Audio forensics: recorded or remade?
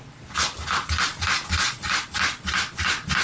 recorded